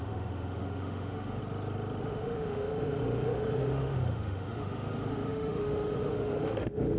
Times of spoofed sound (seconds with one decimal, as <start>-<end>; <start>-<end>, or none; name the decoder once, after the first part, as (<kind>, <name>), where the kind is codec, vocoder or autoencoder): 0.0-1.4 (autoencoder, DAC-VAE); 2.0-7.0